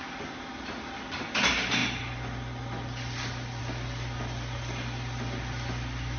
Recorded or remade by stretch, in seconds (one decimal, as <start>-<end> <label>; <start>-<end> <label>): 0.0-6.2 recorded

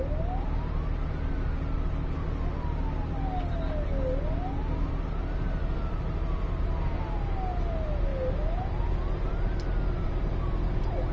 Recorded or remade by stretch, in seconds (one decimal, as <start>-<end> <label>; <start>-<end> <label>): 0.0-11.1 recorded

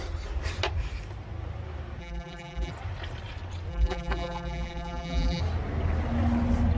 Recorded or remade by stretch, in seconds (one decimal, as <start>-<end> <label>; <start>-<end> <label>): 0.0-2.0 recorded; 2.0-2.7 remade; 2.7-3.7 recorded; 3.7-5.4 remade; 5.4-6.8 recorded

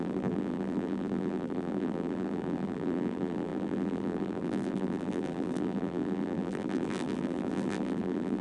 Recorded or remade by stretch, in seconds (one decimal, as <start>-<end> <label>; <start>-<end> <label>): 0.0-8.4 remade

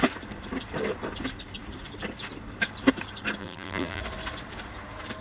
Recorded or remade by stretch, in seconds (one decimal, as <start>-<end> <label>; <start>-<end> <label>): 0.0-3.4 recorded; 3.4-4.0 remade; 4.0-5.2 recorded

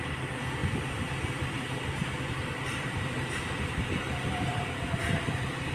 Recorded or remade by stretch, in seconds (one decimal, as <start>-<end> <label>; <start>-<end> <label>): 0.0-0.6 recorded; 0.6-4.0 remade; 4.0-4.5 recorded; 4.5-5.2 remade; 5.2-5.7 recorded

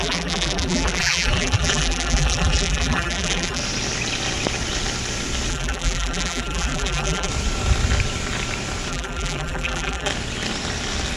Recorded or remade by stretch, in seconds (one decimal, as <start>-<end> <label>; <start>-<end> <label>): 0.0-3.6 remade; 3.6-5.5 recorded; 5.5-7.3 remade; 7.3-8.9 recorded; 8.9-10.1 remade; 10.1-11.2 recorded

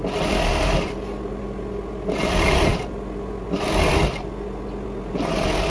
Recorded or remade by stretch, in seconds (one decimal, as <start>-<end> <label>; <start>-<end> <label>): 0.0-5.7 recorded